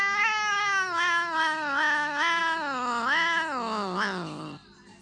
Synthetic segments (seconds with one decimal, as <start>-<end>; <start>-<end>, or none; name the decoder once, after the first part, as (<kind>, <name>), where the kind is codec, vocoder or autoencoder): none